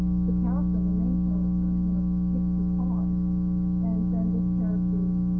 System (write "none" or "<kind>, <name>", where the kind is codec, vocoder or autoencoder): none